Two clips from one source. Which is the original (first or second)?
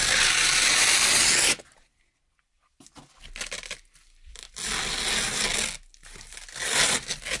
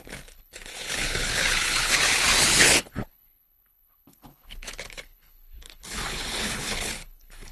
first